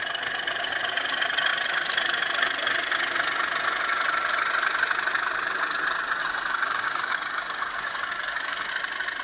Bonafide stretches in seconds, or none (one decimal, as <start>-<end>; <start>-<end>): 0.0-6.2; 8.7-9.2